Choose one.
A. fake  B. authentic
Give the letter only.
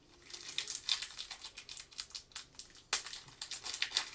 B